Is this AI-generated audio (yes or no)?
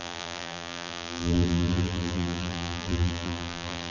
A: yes